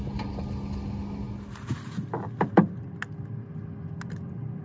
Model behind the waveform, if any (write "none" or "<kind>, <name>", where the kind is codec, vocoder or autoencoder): none